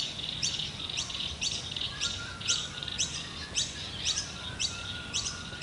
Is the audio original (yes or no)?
no